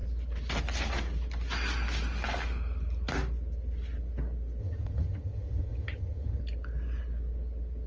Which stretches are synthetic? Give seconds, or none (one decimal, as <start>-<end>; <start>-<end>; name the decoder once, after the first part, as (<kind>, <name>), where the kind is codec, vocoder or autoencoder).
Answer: 4.6-6.4 (vocoder, HiFi-GAN)